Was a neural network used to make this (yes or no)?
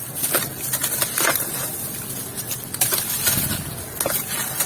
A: no